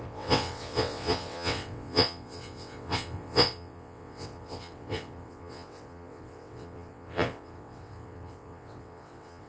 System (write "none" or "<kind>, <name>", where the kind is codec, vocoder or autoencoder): vocoder, WaveNeXt